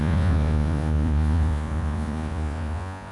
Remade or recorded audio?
remade